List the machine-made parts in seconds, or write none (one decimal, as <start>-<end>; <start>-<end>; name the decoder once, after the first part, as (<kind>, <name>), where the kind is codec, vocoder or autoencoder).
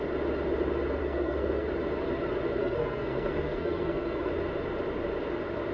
1.0-1.7 (codec, SNAC); 2.6-4.3